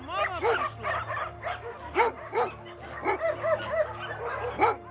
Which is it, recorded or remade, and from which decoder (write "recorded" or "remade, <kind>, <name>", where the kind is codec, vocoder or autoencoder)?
recorded